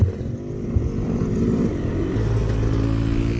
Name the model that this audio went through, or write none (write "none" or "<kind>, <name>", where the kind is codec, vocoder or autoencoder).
none